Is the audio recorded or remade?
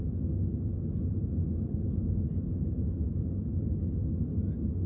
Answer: recorded